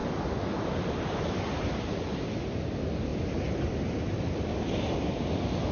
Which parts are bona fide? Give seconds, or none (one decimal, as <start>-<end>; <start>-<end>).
0.0-3.1; 5.2-5.7